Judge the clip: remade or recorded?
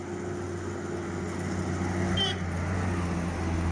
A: recorded